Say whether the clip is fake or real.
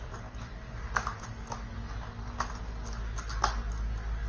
real